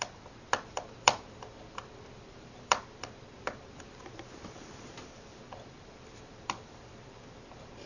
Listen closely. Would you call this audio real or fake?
fake